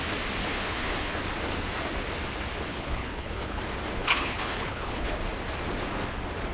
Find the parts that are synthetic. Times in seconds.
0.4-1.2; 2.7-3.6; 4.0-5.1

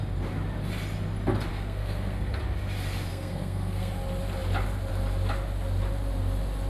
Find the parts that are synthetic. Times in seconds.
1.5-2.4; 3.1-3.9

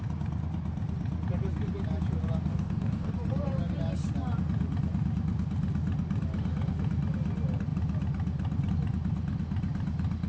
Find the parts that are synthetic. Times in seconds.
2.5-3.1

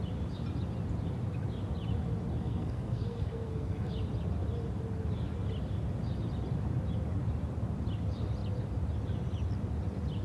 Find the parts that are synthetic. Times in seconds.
2.3-3.9

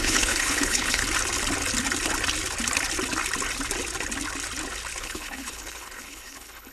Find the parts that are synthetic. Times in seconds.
0.0-1.0; 5.0-6.7